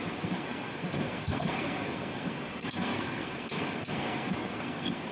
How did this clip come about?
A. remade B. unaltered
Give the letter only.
A